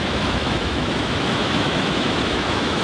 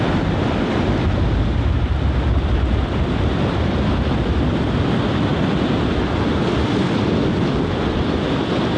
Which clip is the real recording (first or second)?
second